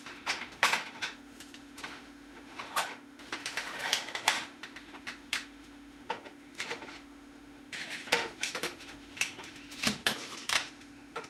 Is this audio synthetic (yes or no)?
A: yes